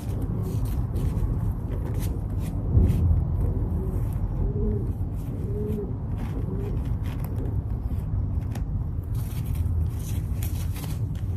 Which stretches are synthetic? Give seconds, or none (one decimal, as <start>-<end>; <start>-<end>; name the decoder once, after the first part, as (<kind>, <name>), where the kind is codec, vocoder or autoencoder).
0.4-1.1 (vocoder, BigVGAN v2)